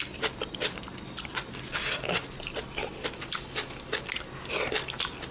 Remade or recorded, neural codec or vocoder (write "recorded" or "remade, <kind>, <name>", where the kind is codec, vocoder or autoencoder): recorded